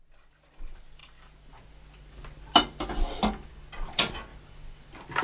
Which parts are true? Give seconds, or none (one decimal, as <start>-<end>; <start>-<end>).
0.0-5.2